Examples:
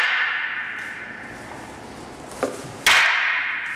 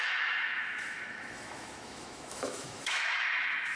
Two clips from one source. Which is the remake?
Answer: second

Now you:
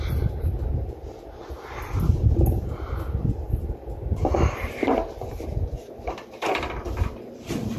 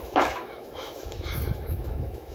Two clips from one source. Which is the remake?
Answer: second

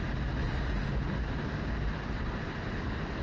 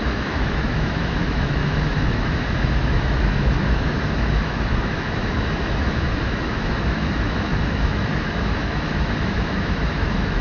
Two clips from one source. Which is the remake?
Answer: second